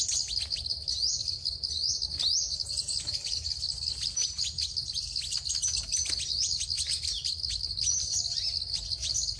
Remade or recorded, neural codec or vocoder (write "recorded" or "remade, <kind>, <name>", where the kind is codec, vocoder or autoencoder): recorded